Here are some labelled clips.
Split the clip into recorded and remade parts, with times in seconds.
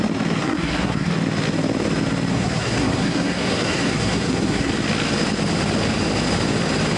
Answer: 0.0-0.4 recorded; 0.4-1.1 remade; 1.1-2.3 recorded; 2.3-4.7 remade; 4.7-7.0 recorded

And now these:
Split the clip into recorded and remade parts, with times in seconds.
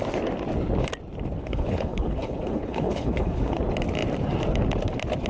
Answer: 0.0-1.4 recorded; 1.4-3.6 remade; 3.6-5.3 recorded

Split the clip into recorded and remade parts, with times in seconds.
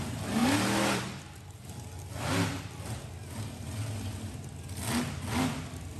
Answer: 0.0-6.0 recorded